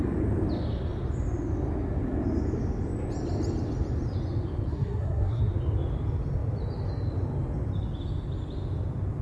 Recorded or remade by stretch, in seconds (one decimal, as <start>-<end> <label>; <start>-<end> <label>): 0.0-4.7 recorded; 4.7-5.4 remade; 5.4-9.2 recorded